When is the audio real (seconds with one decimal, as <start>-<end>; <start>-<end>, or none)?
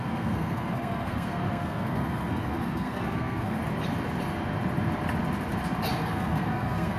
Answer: 3.6-5.9